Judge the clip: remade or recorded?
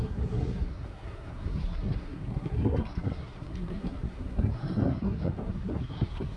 remade